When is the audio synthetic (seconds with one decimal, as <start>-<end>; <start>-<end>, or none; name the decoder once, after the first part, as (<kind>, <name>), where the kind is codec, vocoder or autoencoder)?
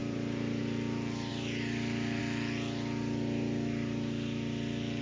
0.0-0.6 (vocoder, BigVGAN v2); 1.3-2.2